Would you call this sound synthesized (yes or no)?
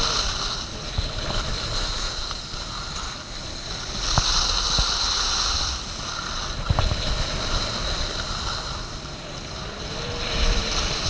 no